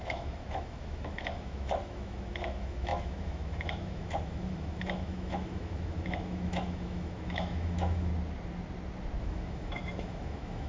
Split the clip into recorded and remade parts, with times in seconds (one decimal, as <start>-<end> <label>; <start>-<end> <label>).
0.0-8.1 remade; 8.1-9.2 recorded; 9.2-10.7 remade